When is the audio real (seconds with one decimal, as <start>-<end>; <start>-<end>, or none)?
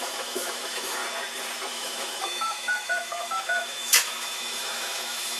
1.0-1.7